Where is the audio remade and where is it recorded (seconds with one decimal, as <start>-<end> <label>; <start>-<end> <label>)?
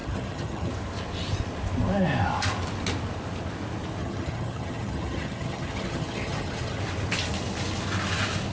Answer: 0.0-0.7 remade; 0.7-4.0 recorded; 4.0-6.8 remade; 6.8-8.5 recorded